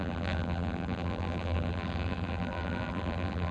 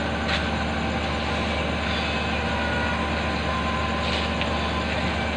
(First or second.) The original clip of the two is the second